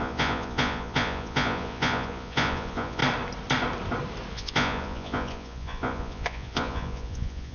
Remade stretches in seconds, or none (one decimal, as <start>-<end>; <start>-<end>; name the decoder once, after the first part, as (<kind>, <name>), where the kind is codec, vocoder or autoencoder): 0.0-3.0 (vocoder, Vocos); 4.3-7.5